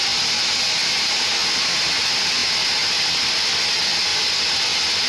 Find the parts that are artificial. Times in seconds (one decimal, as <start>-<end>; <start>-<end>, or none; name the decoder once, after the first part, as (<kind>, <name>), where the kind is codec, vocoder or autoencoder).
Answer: none